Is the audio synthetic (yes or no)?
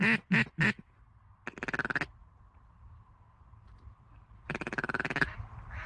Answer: no